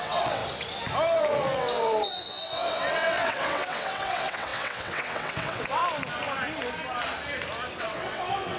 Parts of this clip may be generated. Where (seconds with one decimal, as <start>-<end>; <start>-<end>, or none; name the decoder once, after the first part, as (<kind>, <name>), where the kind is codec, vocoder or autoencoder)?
0.0-0.4 (vocoder, WaveNeXt); 1.2-5.8; 7.8-8.6